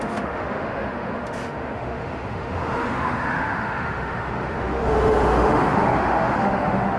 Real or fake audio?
fake